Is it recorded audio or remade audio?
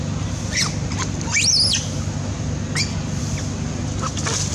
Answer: recorded